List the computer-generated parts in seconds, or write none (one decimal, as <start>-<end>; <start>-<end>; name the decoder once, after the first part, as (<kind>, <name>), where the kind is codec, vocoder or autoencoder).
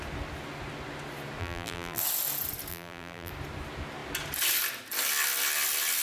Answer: 1.4-2.0 (vocoder, BigVGAN v2); 2.7-3.3